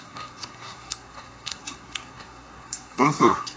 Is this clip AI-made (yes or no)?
yes